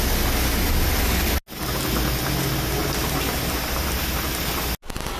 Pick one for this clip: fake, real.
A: real